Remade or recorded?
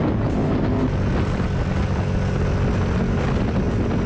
recorded